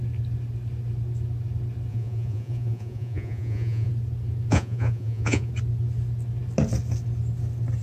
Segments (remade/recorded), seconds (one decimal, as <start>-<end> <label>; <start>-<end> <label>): 0.0-1.9 recorded; 1.9-3.9 remade; 3.9-4.5 recorded; 4.5-5.5 remade; 5.5-7.8 recorded